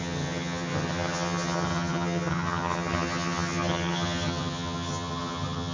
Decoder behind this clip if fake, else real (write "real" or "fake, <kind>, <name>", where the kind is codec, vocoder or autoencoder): fake, vocoder, HiFi-GAN